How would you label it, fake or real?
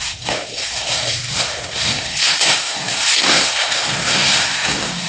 fake